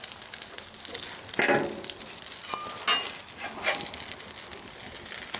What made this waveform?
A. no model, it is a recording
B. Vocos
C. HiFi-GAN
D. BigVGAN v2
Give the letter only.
A